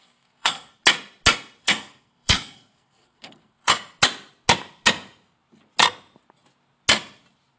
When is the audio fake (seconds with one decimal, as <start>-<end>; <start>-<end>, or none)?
0.0-0.7; 1.6-3.7

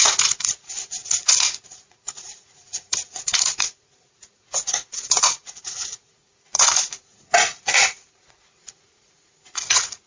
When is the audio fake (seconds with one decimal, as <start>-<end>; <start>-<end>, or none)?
0.0-10.1

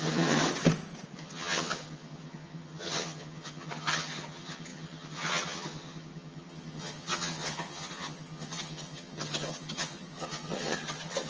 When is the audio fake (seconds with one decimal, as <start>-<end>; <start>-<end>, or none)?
0.0-0.4; 1.2-11.3

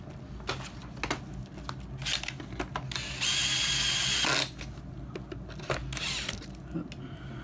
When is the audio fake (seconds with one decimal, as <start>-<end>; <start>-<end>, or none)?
none

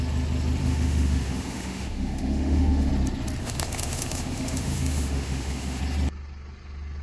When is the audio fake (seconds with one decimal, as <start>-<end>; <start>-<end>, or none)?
0.6-2.9; 3.4-5.8